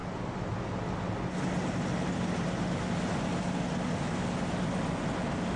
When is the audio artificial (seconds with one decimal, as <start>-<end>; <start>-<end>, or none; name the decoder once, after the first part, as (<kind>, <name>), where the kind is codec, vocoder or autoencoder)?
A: none